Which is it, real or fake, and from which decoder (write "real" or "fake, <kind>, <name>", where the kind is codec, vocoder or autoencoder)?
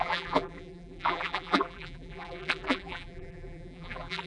fake, vocoder, BigVGAN v2